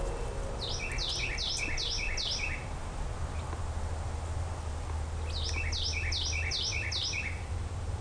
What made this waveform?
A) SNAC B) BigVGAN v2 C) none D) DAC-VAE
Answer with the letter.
C